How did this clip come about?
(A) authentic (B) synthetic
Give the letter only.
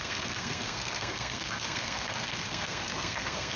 B